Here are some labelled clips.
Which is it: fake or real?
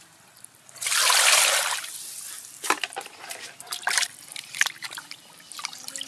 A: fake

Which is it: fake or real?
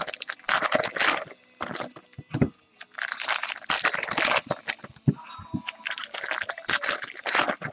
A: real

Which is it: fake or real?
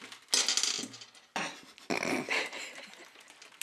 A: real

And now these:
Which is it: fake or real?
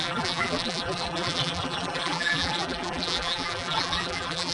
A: fake